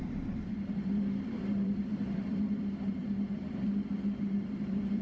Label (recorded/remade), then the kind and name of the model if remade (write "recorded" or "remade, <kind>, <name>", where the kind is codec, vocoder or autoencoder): remade, vocoder, BigVGAN v2